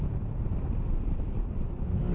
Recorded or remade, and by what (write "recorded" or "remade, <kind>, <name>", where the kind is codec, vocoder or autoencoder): recorded